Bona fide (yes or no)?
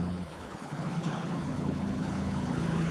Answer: no